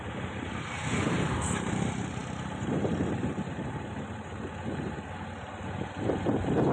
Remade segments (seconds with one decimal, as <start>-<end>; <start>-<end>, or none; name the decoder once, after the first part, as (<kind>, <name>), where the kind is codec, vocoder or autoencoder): none